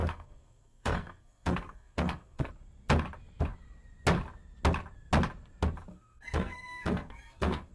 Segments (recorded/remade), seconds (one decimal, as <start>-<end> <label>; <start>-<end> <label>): 0.0-2.5 remade; 2.5-5.9 recorded; 5.9-7.7 remade